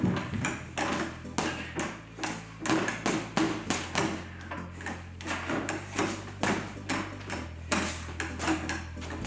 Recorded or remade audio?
recorded